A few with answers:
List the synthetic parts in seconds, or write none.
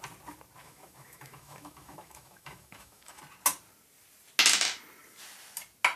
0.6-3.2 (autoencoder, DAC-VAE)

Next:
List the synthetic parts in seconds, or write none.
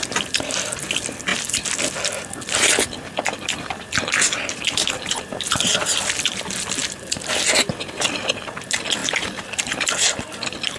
6.8-8.2 (vocoder, BigVGAN v2)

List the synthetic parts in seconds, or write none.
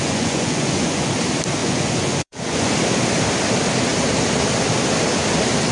0.0-1.1 (vocoder, Vocos); 1.6-2.7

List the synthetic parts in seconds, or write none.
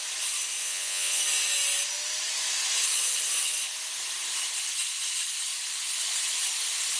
0.6-1.2 (vocoder, Vocos)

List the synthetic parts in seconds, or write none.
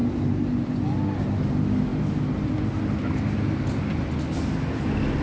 none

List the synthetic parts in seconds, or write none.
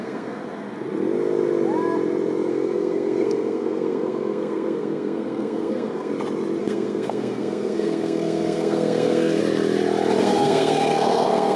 0.0-0.4 (codec, SNAC); 2.5-6.1; 6.6-9.4; 10.2-11.6